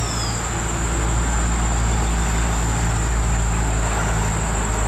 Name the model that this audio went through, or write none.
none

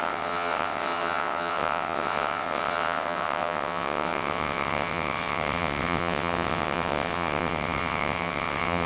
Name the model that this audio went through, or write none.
vocoder, WaveNeXt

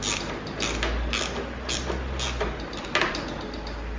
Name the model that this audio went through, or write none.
none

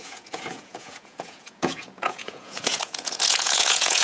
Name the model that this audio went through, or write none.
vocoder, Vocos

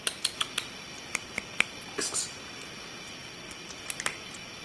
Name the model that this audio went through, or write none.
none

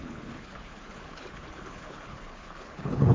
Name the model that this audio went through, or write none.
codec, HILCodec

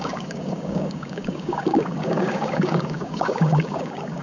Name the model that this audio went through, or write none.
codec, DAC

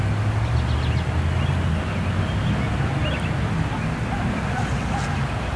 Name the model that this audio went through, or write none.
none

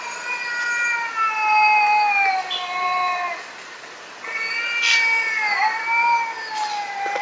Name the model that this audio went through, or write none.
none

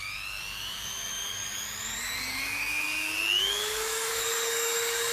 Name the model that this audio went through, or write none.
codec, DAC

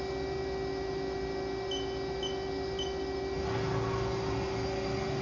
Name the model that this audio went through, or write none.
none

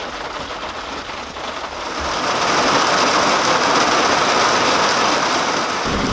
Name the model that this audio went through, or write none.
none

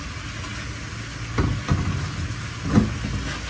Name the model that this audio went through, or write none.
none